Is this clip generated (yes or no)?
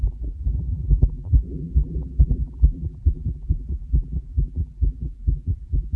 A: yes